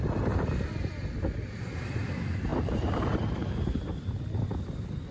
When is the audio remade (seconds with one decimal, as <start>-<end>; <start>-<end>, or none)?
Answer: 2.5-4.1